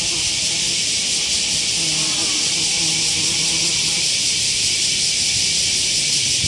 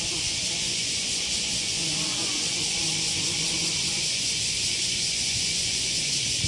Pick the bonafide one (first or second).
first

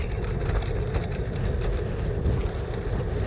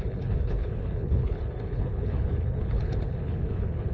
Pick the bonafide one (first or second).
first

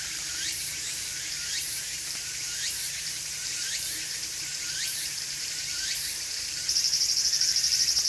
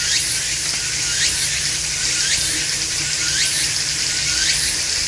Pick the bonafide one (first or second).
second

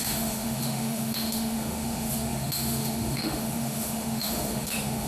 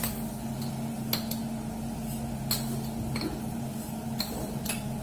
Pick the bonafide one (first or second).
second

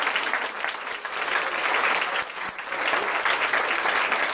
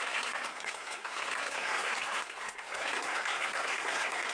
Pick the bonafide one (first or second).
first